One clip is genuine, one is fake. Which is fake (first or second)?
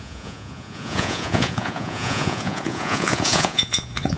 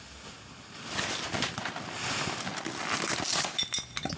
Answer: first